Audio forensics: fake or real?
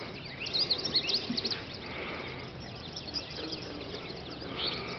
real